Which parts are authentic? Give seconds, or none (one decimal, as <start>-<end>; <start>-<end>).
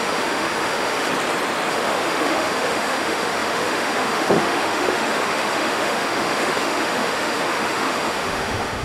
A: 1.1-1.7